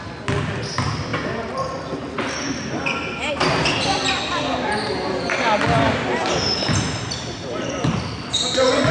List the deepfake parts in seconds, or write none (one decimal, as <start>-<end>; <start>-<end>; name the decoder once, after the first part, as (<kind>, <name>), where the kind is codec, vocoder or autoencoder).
none